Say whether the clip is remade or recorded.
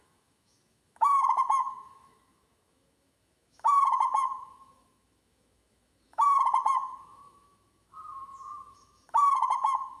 remade